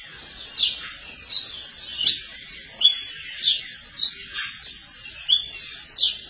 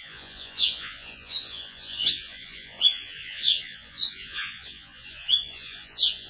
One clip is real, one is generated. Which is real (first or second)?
first